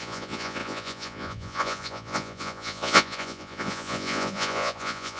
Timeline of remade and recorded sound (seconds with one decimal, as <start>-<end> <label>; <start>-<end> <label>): 0.0-5.2 remade